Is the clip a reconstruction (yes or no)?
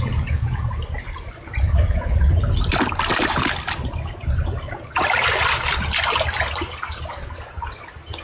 no